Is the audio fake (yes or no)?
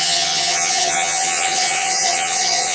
yes